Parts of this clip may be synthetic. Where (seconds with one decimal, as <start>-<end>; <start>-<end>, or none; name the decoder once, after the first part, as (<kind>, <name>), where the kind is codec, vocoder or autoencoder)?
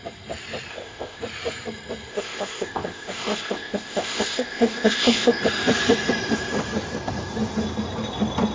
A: 0.7-1.2 (codec, ZipCodec); 2.1-5.4